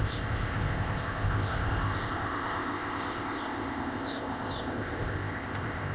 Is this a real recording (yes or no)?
no